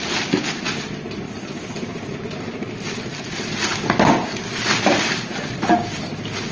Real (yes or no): yes